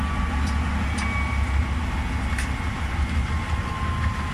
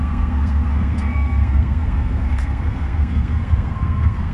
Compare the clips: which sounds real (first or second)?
first